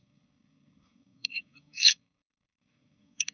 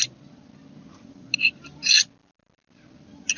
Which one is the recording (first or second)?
second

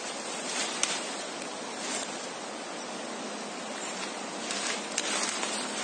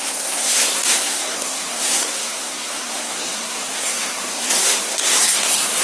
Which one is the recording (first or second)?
first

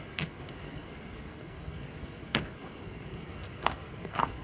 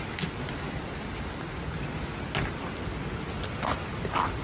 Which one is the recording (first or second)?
second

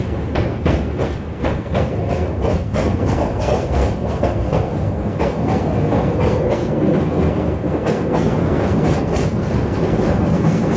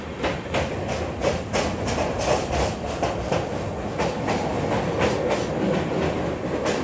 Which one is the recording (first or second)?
second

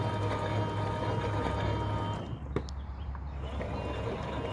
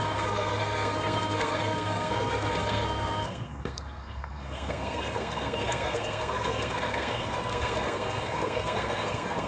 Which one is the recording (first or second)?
first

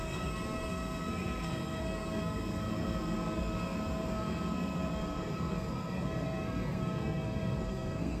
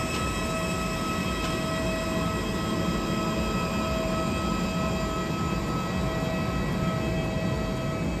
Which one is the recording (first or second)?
second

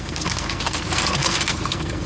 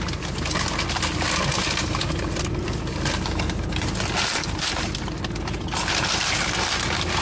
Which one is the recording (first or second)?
second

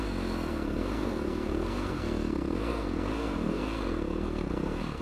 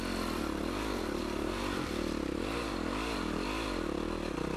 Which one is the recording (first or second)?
second